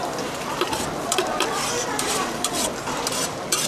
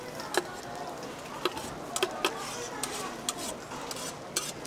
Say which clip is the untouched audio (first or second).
second